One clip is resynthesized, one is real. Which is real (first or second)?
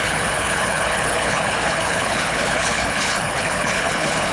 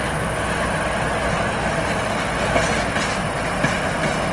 second